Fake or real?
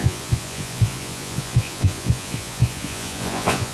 fake